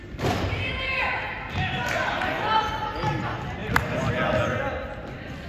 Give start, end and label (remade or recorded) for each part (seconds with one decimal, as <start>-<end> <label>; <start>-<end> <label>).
0.0-5.5 recorded